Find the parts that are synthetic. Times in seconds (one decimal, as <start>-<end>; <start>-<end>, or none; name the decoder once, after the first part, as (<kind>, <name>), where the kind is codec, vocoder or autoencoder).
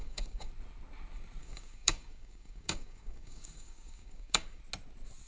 0.0-0.5 (codec, DAC); 1.4-4.6